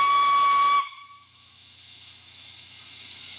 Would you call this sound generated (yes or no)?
yes